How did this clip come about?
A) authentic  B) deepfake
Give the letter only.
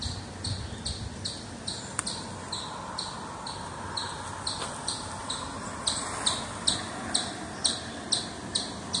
A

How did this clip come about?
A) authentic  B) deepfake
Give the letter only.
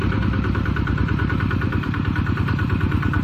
B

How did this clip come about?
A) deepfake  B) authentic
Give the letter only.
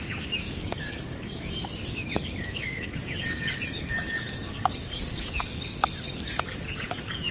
A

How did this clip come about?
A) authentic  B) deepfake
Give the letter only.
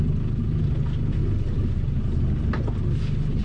A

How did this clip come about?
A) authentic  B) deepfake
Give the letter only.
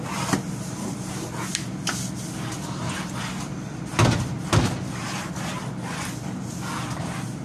A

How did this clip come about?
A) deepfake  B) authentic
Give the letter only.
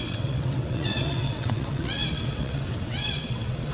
A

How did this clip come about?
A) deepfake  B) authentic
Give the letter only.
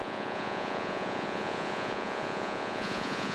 A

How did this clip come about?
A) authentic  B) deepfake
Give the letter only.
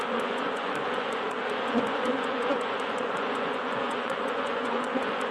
B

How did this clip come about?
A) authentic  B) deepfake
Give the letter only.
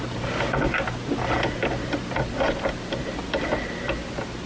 A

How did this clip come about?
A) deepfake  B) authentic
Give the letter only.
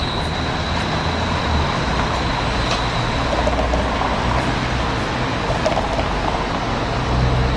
B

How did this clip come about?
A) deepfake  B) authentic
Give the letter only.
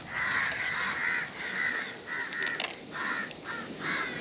B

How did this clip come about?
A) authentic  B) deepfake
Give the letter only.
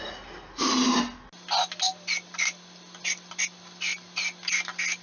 A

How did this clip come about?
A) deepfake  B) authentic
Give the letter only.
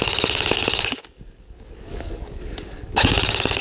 A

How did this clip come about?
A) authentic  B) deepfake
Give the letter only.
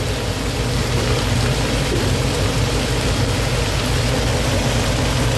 A